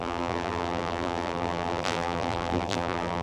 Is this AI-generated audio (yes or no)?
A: yes